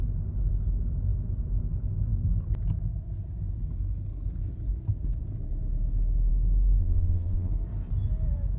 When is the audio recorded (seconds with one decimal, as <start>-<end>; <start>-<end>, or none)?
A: 0.0-6.8; 7.5-8.6